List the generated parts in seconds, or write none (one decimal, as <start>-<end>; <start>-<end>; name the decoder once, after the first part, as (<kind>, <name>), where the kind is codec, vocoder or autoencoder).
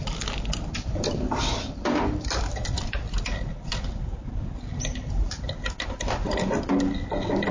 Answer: none